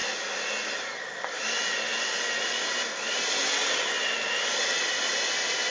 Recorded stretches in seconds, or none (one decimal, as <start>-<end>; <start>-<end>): 0.0-5.7